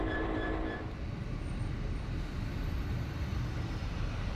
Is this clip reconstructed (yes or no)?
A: yes